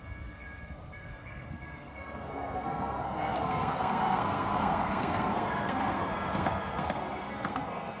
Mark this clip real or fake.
fake